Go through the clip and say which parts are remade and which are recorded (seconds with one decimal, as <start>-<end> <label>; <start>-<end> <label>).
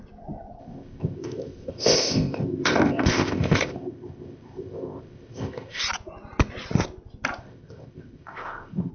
0.0-0.6 recorded; 0.6-5.8 remade; 5.8-7.4 recorded; 7.4-8.9 remade